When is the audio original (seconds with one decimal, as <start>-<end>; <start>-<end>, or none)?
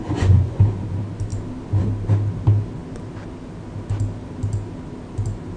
0.6-5.6